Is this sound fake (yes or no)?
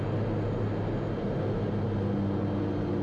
no